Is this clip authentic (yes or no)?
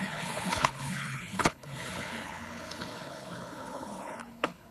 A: no